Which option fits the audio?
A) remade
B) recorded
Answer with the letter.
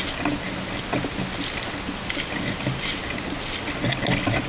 B